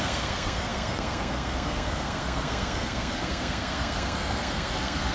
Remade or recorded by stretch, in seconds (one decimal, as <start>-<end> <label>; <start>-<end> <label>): 0.0-5.1 remade